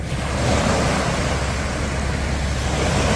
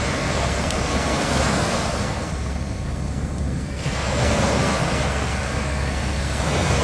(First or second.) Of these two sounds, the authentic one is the first